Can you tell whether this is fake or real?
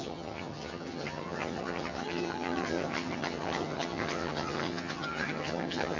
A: fake